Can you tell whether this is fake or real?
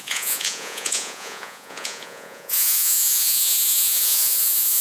fake